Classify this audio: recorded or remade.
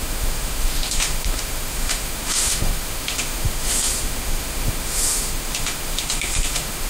remade